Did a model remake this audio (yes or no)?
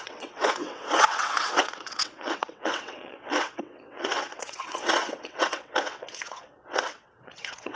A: yes